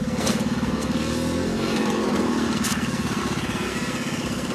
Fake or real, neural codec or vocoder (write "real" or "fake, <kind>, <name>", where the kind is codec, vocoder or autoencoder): fake, codec, SNAC